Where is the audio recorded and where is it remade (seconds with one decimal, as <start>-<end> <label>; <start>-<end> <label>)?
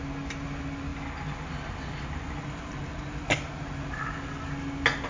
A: 0.0-5.1 recorded